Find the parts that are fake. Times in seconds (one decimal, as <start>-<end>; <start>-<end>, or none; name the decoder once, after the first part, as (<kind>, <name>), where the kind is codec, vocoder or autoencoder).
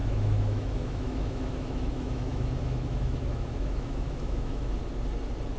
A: 0.0-4.8 (autoencoder, DAC-VAE)